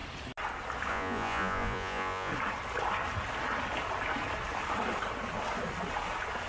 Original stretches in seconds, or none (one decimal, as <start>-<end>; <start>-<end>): 0.0-0.9; 2.3-6.5